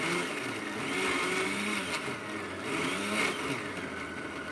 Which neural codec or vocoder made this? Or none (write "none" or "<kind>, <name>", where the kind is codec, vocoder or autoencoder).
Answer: none